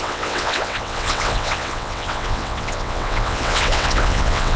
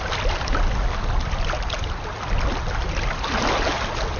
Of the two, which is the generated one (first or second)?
first